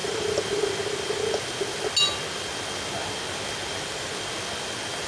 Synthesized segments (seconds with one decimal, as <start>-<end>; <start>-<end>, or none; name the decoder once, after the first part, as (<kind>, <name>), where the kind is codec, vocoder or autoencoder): 0.0-1.3 (vocoder, BigVGAN v2); 3.6-4.1